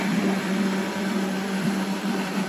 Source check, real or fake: fake